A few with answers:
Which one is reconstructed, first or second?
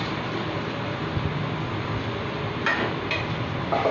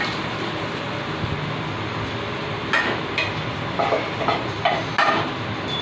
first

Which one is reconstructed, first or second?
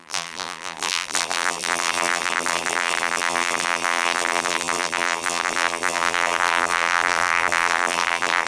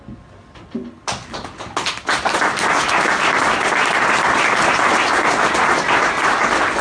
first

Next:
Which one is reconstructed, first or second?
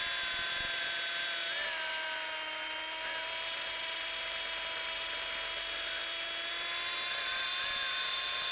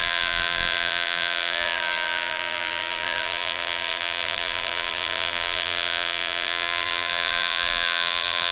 second